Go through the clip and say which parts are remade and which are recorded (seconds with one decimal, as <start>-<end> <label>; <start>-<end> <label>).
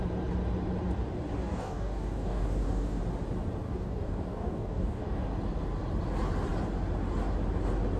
0.0-1.4 recorded; 1.4-3.0 remade; 3.0-3.6 recorded; 3.6-5.3 remade; 5.3-8.0 recorded